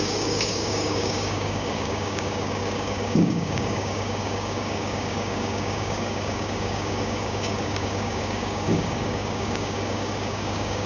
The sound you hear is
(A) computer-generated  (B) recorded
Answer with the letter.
A